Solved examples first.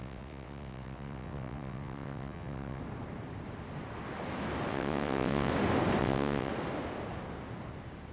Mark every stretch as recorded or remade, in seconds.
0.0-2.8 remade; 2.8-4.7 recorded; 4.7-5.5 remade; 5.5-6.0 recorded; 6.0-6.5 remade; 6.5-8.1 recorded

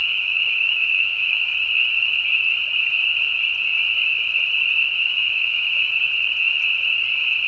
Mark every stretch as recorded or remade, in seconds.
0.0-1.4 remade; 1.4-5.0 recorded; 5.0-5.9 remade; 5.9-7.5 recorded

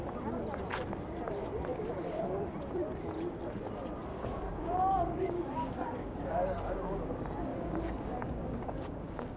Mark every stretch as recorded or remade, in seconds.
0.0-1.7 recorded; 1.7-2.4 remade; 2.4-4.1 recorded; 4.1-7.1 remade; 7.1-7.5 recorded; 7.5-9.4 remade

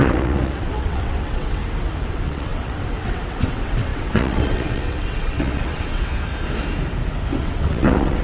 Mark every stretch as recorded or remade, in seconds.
0.0-1.6 remade; 1.6-2.1 recorded; 2.1-6.1 remade; 6.1-7.4 recorded; 7.4-8.2 remade

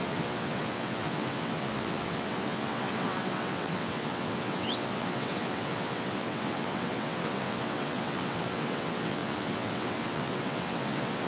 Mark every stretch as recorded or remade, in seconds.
0.0-11.3 remade

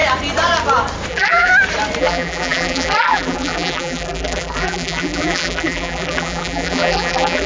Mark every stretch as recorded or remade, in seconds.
0.0-1.1 recorded; 1.1-1.5 remade; 1.5-2.0 recorded; 2.0-7.5 remade

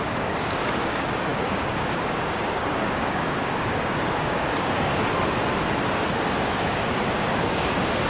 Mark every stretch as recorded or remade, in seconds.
0.0-4.9 remade; 4.9-6.1 recorded; 6.1-8.1 remade

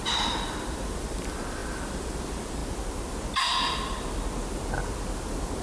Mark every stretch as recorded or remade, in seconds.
0.0-2.6 remade; 2.6-5.6 recorded